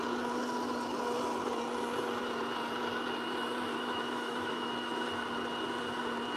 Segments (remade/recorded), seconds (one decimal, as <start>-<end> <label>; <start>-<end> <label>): 0.0-3.7 recorded; 3.7-4.7 remade; 4.7-6.4 recorded